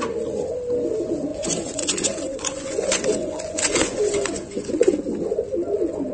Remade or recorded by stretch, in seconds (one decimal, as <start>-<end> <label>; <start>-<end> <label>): 0.0-1.3 recorded; 1.3-5.0 remade; 5.0-6.1 recorded